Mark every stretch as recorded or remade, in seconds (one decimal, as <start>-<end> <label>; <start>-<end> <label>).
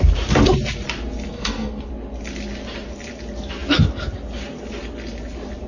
0.0-1.3 recorded; 1.3-1.9 remade; 1.9-5.7 recorded